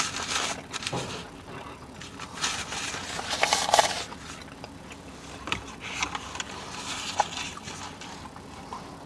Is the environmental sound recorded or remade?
recorded